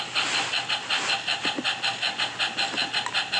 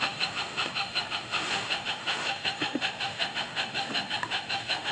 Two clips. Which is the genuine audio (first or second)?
first